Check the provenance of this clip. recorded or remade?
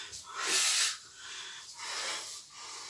recorded